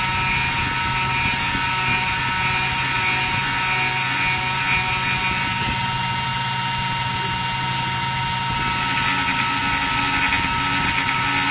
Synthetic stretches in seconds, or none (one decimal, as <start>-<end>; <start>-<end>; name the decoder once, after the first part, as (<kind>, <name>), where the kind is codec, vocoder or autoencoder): none